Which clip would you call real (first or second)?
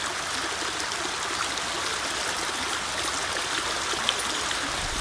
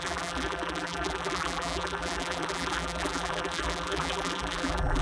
first